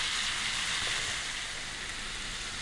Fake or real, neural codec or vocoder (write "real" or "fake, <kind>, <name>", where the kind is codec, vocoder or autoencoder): real